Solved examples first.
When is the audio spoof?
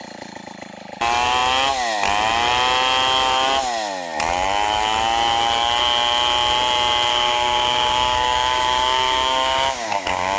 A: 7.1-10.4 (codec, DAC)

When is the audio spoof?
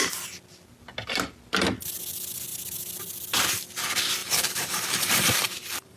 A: 4.2-6.0 (vocoder, BigVGAN v2)